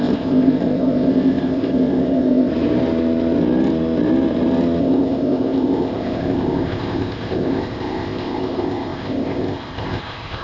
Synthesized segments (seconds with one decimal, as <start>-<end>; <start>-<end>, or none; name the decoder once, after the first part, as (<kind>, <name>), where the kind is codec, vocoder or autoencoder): 0.0-2.5 (codec, ZipCodec); 4.8-10.4